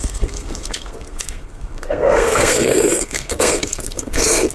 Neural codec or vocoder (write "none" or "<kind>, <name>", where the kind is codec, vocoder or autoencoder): codec, SNAC